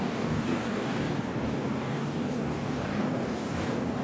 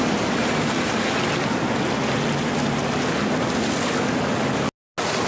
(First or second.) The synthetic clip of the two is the first